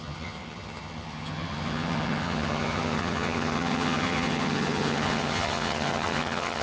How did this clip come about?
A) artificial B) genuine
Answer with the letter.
A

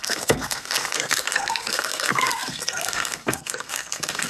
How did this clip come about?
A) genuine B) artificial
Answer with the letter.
B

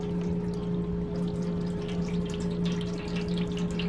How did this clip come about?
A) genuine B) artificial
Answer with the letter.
A